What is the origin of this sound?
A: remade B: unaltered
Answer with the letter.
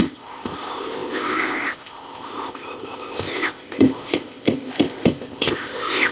A